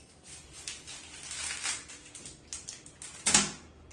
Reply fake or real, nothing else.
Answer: real